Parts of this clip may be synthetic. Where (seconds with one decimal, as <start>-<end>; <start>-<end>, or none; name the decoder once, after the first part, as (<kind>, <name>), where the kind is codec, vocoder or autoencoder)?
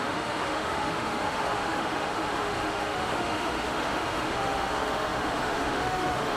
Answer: 0.0-6.4 (autoencoder, DAC-VAE)